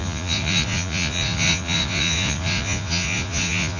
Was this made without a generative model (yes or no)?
no